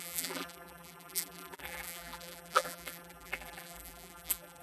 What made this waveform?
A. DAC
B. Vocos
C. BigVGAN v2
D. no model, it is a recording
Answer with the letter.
C